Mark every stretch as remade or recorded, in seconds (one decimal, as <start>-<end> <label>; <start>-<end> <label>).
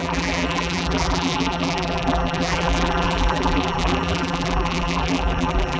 0.0-5.8 remade